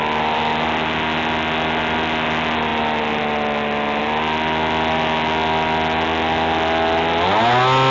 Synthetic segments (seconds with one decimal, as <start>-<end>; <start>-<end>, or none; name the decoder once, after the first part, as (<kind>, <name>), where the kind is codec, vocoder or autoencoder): none